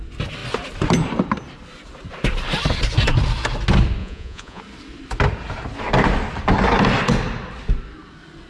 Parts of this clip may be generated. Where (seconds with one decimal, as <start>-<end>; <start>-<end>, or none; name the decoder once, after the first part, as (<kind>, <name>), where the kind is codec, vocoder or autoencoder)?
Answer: 4.0-4.6 (vocoder, Vocos)